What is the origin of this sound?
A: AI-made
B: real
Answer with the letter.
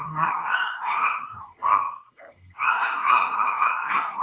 A